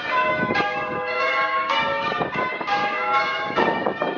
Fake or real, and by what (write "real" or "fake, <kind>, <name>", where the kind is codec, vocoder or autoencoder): fake, codec, DAC